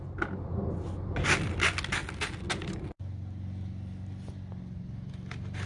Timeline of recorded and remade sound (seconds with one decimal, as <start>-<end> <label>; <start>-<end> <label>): 0.0-5.7 recorded